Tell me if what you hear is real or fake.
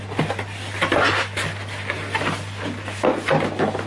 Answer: real